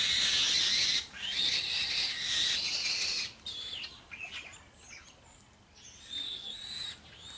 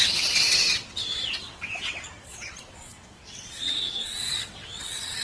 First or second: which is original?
first